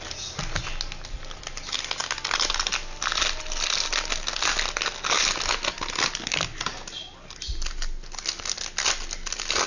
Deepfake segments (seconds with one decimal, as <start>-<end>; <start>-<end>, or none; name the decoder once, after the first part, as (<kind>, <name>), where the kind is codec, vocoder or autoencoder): none